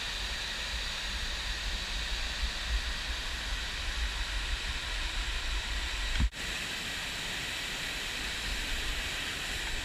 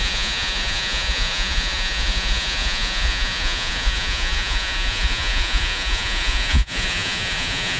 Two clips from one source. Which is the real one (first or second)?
first